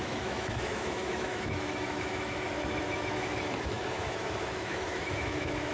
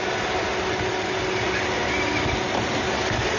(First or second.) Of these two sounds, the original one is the second